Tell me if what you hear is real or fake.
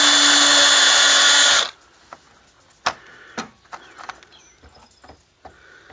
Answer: real